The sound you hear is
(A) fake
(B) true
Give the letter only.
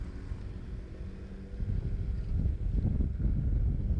B